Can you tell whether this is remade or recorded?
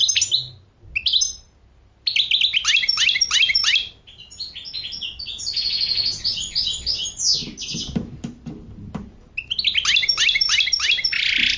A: recorded